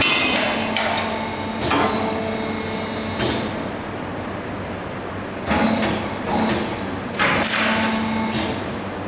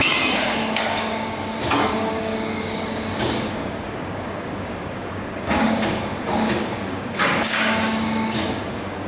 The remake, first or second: second